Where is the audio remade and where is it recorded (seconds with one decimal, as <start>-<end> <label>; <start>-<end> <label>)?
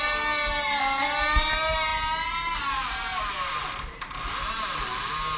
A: 0.0-5.4 recorded